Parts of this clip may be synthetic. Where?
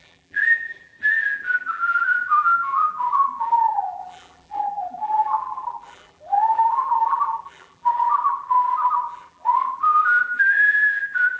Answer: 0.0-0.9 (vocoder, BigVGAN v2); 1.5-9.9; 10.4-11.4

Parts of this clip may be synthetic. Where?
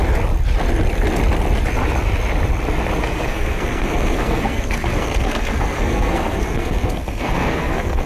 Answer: 3.0-8.1 (codec, SNAC)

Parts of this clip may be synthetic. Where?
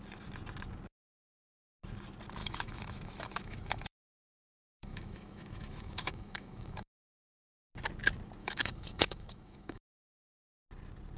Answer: 2.4-7.4 (autoencoder, DAC-VAE); 8.4-9.8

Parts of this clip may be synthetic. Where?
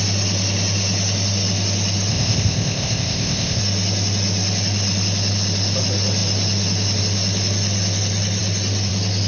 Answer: 2.1-3.6 (codec, ZipCodec)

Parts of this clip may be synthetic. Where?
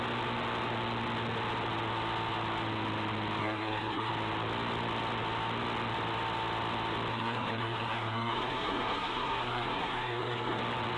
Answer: 3.4-4.1 (codec, SNAC); 7.1-10.6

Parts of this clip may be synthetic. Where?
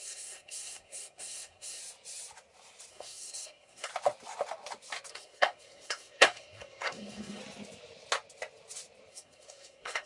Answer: 0.0-1.8 (codec, SNAC); 2.9-3.9; 5.1-7.4; 9.1-10.1